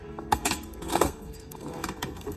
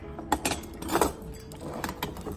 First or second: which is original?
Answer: second